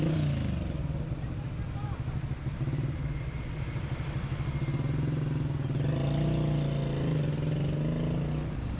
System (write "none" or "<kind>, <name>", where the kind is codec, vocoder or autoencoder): none